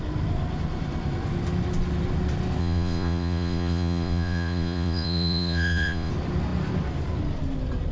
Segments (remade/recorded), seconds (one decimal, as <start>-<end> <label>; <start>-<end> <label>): 0.0-2.6 recorded; 2.6-6.1 remade; 6.1-7.9 recorded